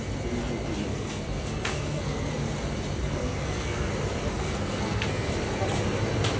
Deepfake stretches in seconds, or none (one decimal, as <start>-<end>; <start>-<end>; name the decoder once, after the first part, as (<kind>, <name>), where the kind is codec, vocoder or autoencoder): 0.9-2.3 (codec, SNAC); 3.1-3.9; 4.4-5.3

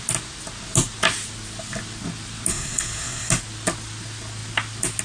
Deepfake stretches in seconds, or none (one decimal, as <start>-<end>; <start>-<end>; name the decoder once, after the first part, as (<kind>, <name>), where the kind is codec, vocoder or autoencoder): 2.5-3.3 (codec, SNAC)

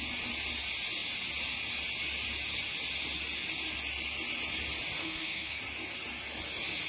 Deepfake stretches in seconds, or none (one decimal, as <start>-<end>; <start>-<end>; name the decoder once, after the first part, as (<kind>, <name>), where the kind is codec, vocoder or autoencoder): 5.0-5.6 (codec, SNAC)

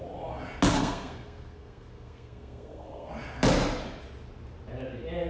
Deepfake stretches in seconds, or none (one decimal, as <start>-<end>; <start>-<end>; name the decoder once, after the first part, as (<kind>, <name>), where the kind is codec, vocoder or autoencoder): 0.7-3.1 (codec, SNAC)